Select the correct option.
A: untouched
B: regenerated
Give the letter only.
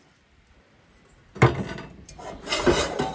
A